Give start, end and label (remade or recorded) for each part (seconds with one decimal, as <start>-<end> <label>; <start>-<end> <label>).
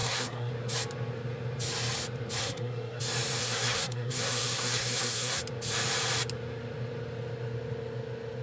0.0-0.5 remade; 0.5-2.4 recorded; 2.4-3.0 remade; 3.0-3.4 recorded; 3.4-5.4 remade; 5.4-8.4 recorded